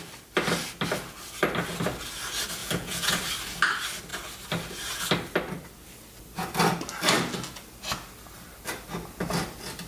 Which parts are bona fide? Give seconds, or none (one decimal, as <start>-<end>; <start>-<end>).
0.0-2.6; 3.1-9.9